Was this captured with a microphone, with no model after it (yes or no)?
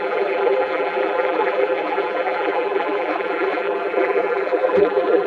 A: no